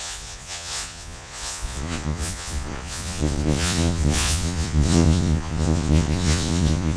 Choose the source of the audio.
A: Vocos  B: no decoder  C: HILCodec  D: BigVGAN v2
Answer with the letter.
A